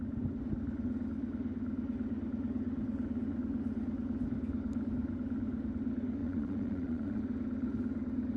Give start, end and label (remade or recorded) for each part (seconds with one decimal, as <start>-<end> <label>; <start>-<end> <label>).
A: 0.0-6.2 recorded; 6.2-7.2 remade; 7.2-8.4 recorded